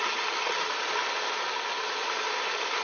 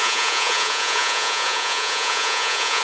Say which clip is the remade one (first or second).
second